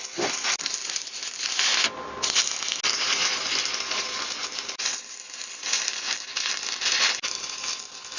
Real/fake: real